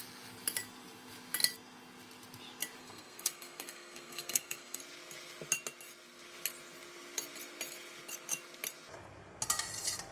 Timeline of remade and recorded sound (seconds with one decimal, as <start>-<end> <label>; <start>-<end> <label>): 0.0-2.8 recorded; 2.8-4.8 remade; 4.8-10.1 recorded